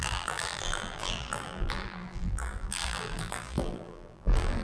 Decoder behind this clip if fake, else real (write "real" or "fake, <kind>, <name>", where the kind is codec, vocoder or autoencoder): fake, vocoder, BigVGAN v2